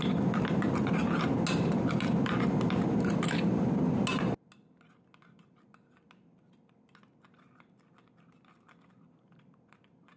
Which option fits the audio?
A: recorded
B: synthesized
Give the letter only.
A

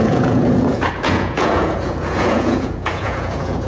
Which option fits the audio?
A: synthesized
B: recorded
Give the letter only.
A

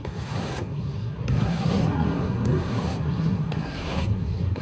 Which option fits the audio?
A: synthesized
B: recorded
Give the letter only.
A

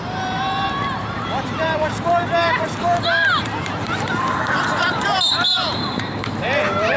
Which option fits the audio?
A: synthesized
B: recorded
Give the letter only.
A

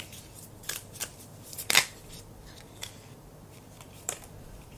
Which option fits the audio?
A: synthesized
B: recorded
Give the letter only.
A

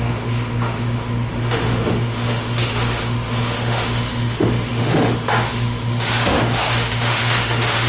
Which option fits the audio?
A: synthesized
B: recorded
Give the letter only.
A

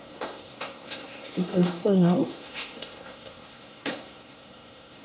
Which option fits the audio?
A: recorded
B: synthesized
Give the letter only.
B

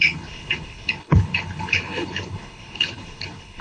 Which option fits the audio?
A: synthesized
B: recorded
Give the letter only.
A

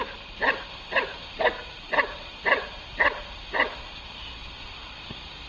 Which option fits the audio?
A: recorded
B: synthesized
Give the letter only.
A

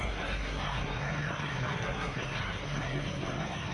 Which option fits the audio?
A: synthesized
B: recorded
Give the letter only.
A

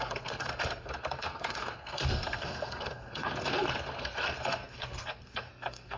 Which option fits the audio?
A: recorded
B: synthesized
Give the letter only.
B